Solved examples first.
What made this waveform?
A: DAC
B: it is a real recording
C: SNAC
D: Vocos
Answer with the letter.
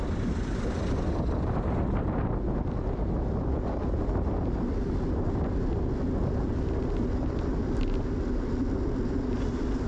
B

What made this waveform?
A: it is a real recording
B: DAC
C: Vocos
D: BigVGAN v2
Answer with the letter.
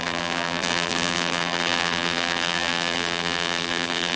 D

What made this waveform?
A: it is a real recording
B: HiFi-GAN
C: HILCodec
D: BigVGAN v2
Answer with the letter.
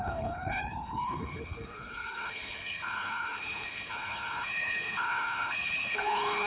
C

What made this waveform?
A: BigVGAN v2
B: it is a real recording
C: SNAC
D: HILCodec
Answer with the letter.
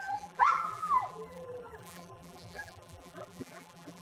A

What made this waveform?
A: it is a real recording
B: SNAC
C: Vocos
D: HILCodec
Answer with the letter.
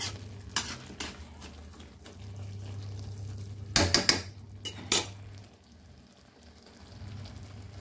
A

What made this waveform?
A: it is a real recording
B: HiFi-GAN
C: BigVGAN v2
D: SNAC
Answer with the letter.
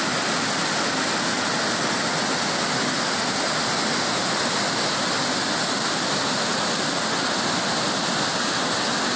A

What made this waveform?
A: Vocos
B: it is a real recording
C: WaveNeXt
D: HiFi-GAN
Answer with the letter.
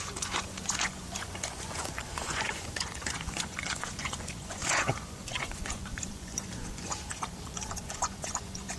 A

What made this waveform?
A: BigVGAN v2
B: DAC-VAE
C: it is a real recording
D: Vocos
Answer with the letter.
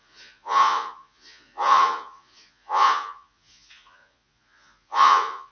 D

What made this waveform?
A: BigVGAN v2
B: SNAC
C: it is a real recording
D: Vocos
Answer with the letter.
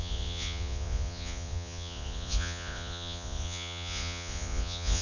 D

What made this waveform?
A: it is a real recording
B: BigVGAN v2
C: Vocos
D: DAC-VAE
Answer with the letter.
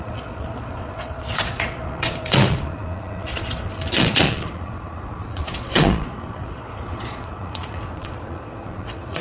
C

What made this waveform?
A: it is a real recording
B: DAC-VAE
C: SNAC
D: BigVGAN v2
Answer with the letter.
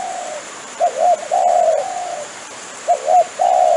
D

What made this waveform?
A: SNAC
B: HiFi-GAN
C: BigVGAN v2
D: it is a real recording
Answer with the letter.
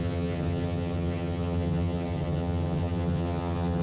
B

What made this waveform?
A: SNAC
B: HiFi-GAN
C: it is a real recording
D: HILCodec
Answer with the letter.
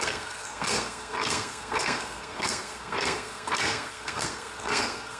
A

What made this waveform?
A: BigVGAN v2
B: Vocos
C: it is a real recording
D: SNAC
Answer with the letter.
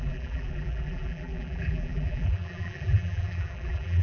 A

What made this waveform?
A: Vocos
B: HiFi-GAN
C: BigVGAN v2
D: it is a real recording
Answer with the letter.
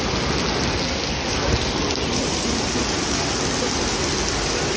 D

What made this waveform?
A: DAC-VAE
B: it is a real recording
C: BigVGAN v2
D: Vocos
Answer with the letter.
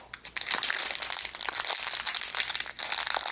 B